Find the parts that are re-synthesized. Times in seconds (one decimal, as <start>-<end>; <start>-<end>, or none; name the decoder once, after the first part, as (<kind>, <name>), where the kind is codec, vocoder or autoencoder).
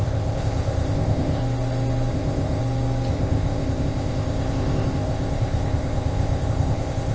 0.0-1.4 (codec, ZipCodec); 2.1-2.6; 3.1-7.1